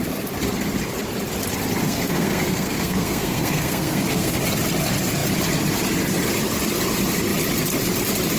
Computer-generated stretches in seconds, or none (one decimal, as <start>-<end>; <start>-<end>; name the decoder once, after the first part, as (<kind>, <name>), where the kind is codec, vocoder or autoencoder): 1.8-4.4 (codec, SNAC)